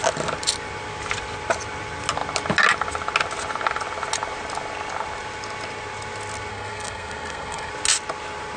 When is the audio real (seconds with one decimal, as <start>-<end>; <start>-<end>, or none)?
0.0-6.5; 7.7-8.6